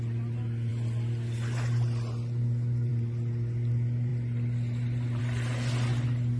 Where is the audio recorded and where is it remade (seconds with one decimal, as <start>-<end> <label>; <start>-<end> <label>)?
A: 0.0-6.4 recorded